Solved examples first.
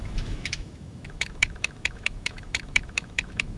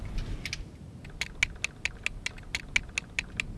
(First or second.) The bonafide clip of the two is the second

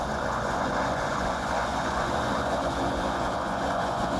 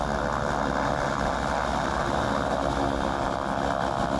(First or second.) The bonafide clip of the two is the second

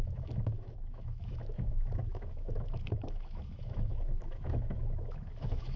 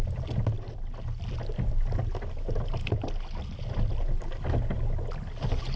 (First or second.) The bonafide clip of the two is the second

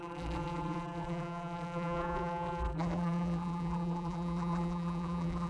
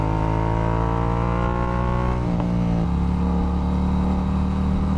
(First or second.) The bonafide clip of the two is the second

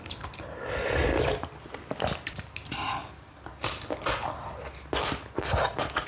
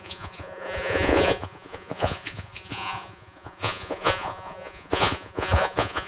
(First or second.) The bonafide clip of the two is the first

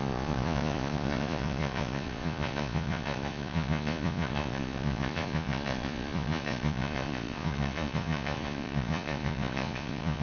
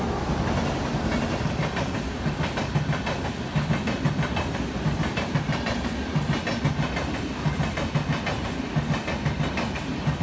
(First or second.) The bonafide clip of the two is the second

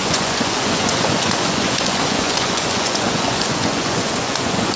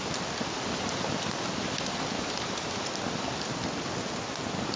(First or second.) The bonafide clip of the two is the second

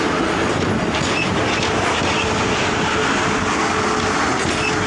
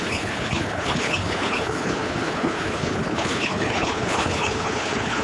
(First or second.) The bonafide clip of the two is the first